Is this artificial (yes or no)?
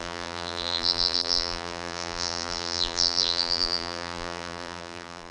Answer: yes